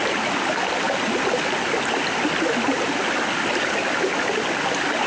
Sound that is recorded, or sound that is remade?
recorded